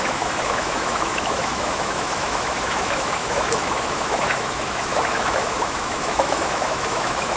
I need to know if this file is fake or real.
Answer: fake